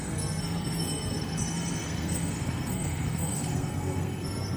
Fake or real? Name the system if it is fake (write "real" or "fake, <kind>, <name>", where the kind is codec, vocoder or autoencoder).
fake, codec, SNAC